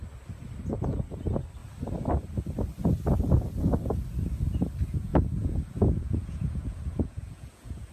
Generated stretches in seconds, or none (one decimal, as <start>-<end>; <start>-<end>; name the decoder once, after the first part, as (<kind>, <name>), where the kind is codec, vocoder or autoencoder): 5.1-7.9 (vocoder, Vocos)